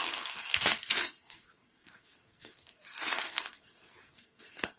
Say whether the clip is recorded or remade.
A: remade